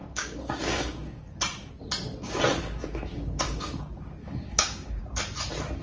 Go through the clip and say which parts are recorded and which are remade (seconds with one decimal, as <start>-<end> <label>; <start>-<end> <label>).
0.0-1.2 remade; 1.2-2.6 recorded; 2.6-3.8 remade; 3.8-4.2 recorded; 4.2-5.0 remade; 5.0-5.8 recorded